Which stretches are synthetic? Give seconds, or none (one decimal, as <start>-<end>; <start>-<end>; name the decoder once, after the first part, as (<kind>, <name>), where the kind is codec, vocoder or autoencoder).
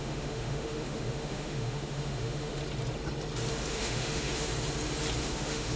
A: 0.0-2.6 (autoencoder, DAC-VAE); 3.7-4.5; 5.2-5.8